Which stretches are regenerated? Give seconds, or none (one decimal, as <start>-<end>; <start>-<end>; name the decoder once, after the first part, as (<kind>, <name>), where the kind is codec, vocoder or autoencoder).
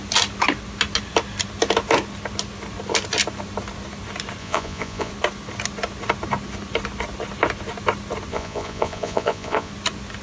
4.4-5.1 (vocoder, Vocos); 8.3-9.7